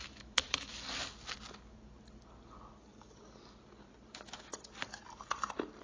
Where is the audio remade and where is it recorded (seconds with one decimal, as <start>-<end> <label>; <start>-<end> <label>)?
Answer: 0.0-0.7 remade; 0.7-4.1 recorded; 4.1-4.5 remade; 4.5-5.8 recorded